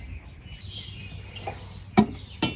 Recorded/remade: recorded